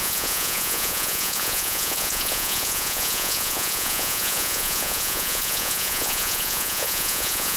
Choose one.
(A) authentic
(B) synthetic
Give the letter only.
B